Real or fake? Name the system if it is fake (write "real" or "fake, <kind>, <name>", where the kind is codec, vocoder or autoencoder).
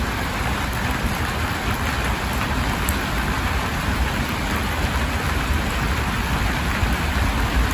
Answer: real